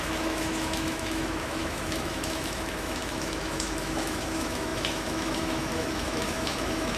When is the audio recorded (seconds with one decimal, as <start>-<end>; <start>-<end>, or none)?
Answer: none